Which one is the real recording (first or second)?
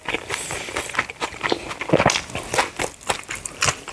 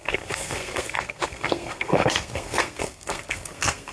first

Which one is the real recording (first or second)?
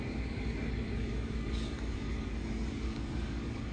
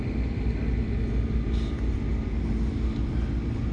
second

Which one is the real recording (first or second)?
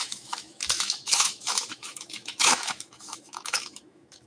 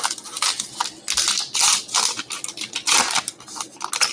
second